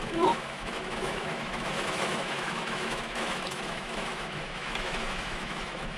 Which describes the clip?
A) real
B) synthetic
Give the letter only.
B